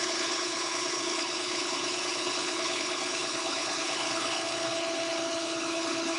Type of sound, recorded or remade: remade